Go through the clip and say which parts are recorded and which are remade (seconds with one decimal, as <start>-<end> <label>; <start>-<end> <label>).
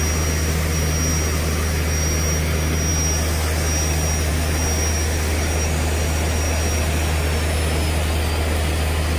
0.0-9.2 recorded